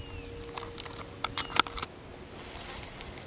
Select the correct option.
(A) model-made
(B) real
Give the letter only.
B